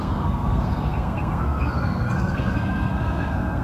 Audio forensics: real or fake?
fake